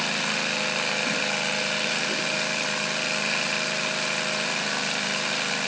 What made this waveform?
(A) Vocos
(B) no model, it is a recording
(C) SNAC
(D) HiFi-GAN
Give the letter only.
B